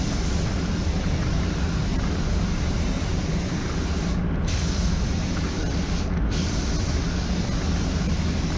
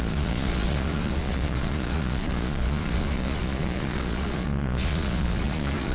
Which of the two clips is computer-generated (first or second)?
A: second